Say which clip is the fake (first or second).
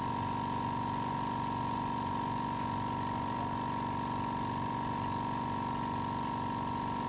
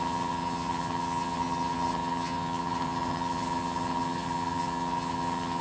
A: second